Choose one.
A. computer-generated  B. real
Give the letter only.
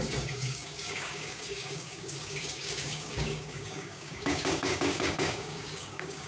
A